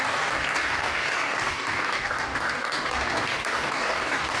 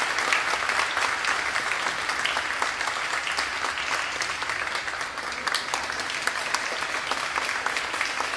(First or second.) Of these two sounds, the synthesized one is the first